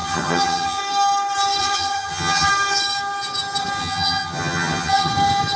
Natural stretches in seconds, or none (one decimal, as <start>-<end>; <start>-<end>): 0.8-1.6; 2.5-3.8; 5.1-5.6